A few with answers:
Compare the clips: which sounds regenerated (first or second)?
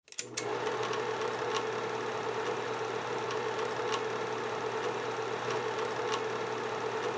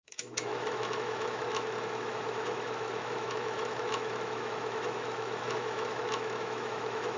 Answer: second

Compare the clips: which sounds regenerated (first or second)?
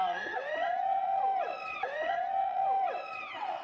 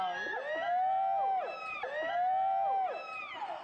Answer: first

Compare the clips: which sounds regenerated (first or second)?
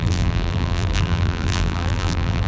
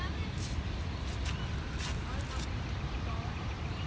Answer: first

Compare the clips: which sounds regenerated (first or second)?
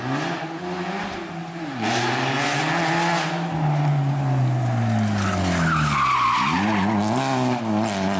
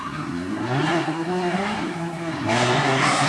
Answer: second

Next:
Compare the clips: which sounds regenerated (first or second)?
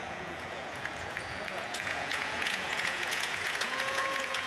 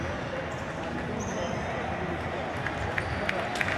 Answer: first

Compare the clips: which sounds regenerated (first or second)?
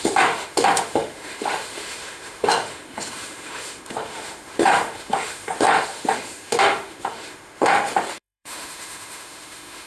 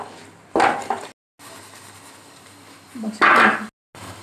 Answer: first